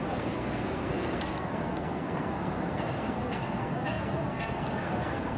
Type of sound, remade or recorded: remade